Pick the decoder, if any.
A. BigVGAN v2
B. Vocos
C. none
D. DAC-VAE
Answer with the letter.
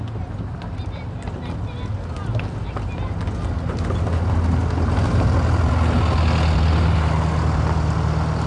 C